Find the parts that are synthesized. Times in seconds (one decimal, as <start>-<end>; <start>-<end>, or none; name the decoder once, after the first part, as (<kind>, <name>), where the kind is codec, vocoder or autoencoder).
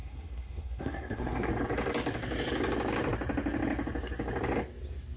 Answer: 0.0-1.5 (codec, SNAC)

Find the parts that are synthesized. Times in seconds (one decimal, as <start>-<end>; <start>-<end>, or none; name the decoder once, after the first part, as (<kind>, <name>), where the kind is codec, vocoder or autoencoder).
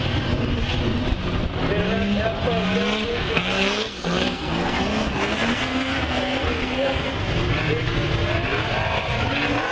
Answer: 3.1-7.1 (codec, SNAC)